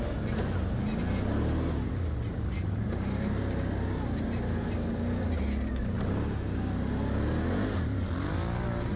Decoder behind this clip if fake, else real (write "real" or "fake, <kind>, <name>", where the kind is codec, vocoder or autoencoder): real